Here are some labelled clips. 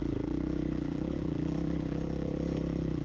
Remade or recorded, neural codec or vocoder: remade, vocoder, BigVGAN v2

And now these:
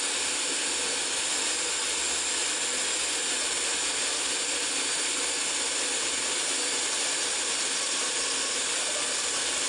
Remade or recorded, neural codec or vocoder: recorded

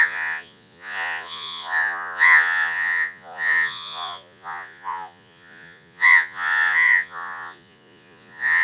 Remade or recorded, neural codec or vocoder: remade, vocoder, Vocos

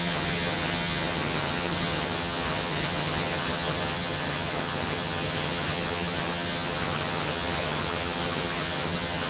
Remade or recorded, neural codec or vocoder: remade, vocoder, HiFi-GAN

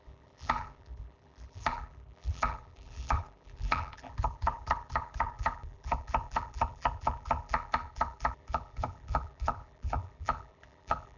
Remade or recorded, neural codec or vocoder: remade, vocoder, BigVGAN v2